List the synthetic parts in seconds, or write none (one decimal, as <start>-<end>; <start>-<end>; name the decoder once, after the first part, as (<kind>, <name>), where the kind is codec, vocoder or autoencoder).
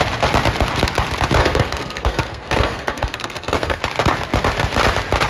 1.4-3.8 (codec, SNAC)